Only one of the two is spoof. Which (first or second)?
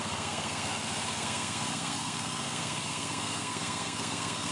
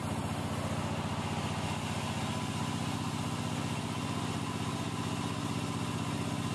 first